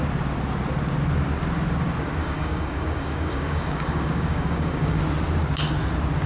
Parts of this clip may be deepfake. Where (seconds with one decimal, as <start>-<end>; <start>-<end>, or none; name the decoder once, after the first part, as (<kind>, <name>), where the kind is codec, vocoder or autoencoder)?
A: 2.2-5.0 (codec, DAC)